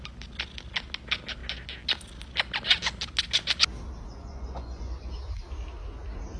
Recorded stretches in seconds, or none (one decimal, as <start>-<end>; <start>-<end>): 0.0-4.1; 5.1-6.4